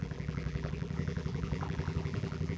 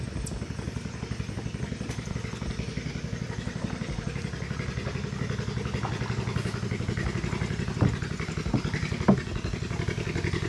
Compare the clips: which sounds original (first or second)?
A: second